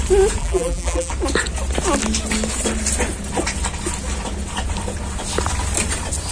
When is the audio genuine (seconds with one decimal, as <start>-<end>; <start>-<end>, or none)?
0.0-0.4; 1.1-6.3